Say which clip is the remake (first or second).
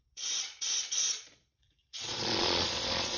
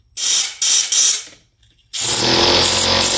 first